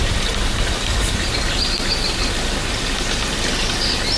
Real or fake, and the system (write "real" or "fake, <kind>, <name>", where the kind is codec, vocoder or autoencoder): real